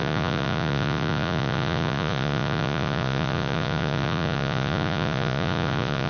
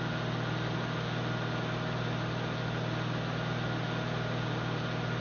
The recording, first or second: second